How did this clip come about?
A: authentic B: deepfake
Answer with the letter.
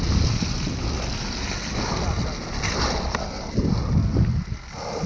A